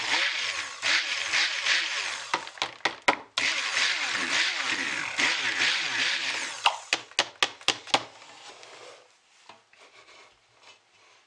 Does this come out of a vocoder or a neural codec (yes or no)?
no